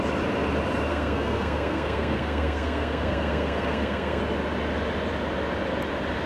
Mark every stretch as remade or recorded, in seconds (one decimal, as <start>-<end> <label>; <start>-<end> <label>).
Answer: 0.0-0.9 recorded; 0.9-4.2 remade; 4.2-6.3 recorded